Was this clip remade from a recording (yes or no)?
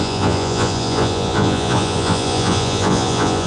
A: yes